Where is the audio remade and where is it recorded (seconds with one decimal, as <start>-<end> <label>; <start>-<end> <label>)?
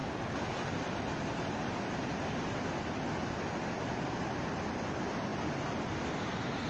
0.0-0.7 remade; 0.7-6.7 recorded